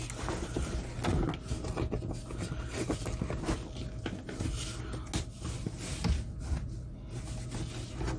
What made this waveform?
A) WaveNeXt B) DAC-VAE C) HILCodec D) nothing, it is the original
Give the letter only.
D